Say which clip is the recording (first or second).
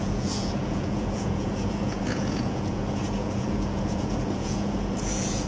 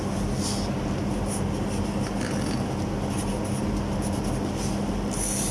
second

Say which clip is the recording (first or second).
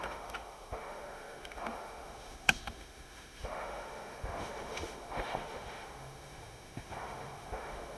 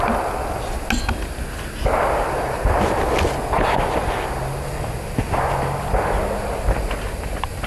second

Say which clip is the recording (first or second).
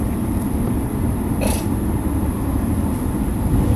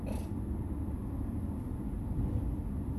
second